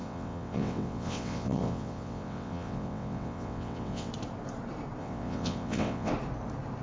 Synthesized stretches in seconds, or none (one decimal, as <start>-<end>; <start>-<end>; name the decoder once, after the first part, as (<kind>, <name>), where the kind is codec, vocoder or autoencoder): 0.0-4.1 (vocoder, WaveNeXt); 5.0-6.1